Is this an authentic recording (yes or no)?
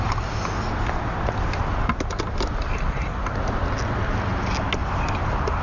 yes